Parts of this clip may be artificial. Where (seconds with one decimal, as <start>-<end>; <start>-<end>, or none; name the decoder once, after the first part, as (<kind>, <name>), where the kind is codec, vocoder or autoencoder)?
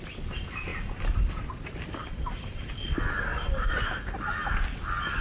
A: 0.7-1.3 (vocoder, BigVGAN v2); 2.0-2.7; 3.3-4.5